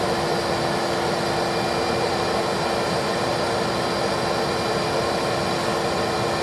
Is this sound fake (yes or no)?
no